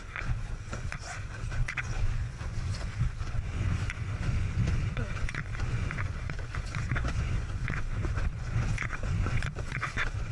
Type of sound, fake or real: fake